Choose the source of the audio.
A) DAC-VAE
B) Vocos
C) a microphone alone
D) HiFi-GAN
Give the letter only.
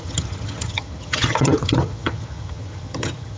D